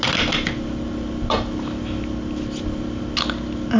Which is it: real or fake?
real